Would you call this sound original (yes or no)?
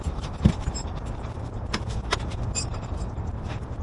no